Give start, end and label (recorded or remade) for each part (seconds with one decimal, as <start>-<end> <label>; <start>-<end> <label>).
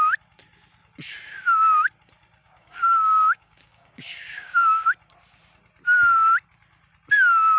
0.0-2.4 recorded; 2.4-4.8 remade; 4.8-7.6 recorded